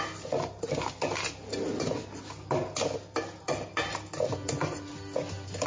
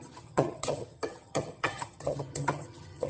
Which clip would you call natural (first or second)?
first